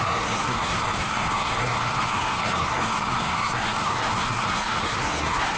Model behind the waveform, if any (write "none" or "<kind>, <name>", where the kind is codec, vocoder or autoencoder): codec, SNAC